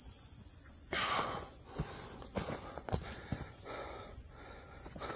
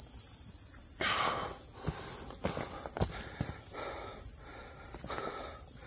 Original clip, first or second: second